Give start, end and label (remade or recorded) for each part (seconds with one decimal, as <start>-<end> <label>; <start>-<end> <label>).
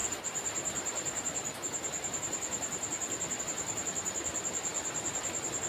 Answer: 0.0-5.7 recorded